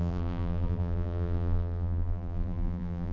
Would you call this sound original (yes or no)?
no